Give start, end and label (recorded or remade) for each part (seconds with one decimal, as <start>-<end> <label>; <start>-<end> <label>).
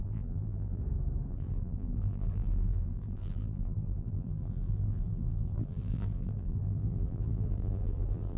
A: 0.0-0.8 remade; 0.8-1.3 recorded; 1.3-8.4 remade